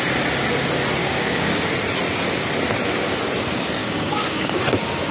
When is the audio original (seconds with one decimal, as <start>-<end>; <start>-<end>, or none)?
0.0-1.0; 1.6-3.8; 4.6-5.1